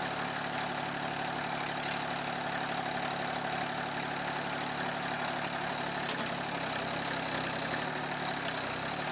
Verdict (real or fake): real